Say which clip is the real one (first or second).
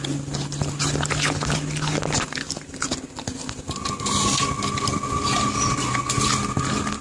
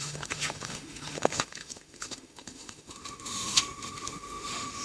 first